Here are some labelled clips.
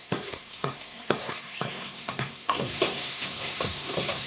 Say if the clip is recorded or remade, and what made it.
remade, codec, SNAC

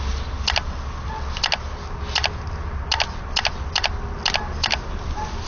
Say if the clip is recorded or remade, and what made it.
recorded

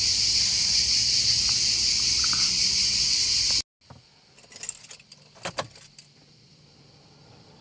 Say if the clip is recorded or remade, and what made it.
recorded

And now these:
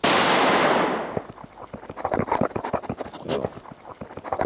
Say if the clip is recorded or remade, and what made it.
recorded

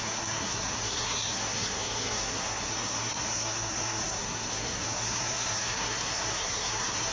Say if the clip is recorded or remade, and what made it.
remade, codec, SNAC